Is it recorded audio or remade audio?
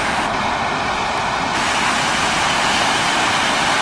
recorded